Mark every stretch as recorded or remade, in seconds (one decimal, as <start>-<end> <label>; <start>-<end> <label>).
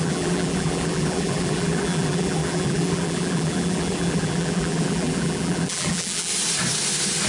0.0-6.3 remade; 6.3-7.3 recorded